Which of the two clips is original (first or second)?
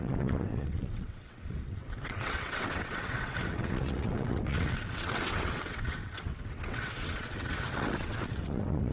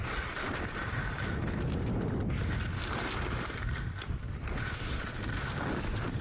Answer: second